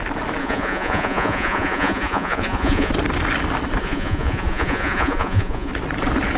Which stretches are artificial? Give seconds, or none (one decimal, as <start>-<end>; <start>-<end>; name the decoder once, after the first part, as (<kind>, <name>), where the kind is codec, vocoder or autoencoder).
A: 0.4-2.9 (vocoder, Vocos); 3.8-5.7